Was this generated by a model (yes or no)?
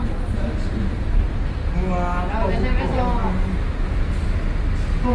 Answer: no